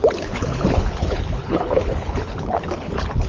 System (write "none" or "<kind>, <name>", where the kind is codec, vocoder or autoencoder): codec, HILCodec